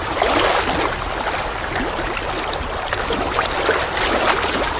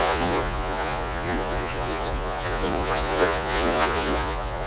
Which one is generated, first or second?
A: second